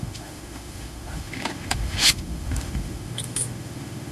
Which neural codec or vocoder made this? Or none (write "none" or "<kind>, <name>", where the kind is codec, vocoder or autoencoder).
autoencoder, DAC-VAE